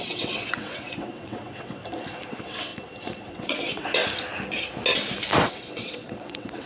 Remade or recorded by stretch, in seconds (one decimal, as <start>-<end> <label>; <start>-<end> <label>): 0.0-1.8 remade; 1.8-2.3 recorded; 2.3-2.7 remade; 2.7-3.2 recorded; 3.2-4.0 remade; 4.0-5.4 recorded; 5.4-6.7 remade

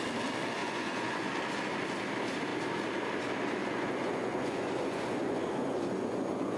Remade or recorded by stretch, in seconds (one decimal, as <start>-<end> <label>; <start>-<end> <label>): 0.0-0.6 recorded; 0.6-1.3 remade; 1.3-3.6 recorded; 3.6-6.6 remade